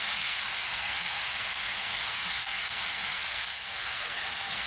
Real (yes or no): no